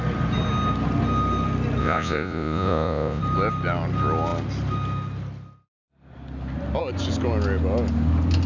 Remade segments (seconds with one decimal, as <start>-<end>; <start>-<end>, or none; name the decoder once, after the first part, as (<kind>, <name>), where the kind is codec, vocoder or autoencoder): 1.8-3.2 (vocoder, Vocos)